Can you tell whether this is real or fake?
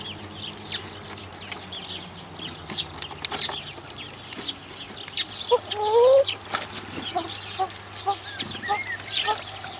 real